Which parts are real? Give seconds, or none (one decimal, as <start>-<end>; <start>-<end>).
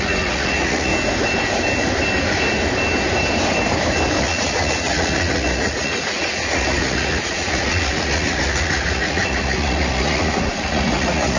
0.9-4.2